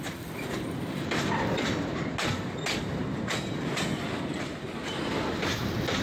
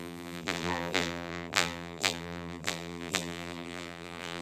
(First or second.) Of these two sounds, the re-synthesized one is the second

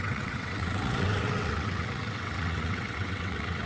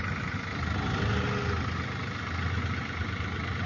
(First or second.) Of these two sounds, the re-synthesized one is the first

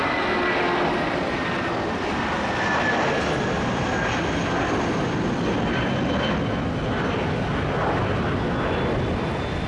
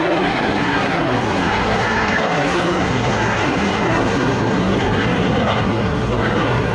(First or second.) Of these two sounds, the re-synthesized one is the second